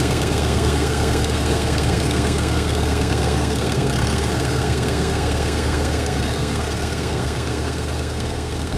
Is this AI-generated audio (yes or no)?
yes